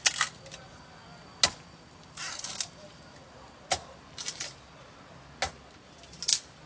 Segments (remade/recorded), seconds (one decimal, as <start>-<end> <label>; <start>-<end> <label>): 0.0-3.2 recorded; 3.2-4.2 remade; 4.2-6.7 recorded